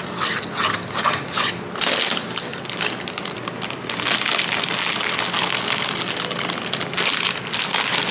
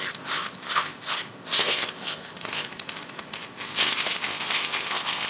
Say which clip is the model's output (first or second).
second